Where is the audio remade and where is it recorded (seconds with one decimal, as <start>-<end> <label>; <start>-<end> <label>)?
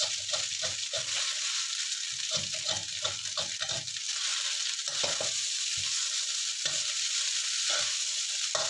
0.0-8.7 recorded